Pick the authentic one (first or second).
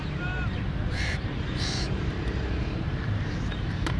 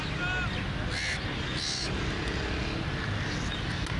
second